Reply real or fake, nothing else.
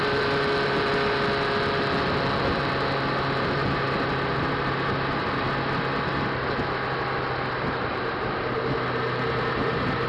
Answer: real